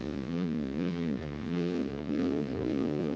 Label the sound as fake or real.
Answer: fake